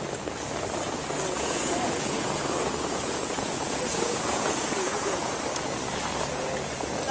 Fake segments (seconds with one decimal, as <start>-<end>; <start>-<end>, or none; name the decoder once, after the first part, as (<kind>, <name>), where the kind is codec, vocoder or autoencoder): 1.0-5.3 (vocoder, Vocos)